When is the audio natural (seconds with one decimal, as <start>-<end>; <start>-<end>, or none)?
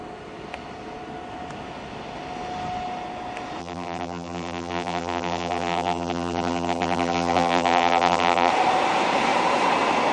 0.0-3.6; 8.5-10.1